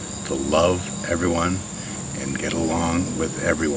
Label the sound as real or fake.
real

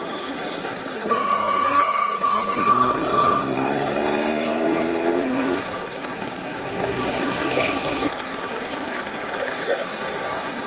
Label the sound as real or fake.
fake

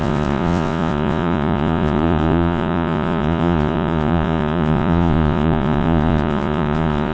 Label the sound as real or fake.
fake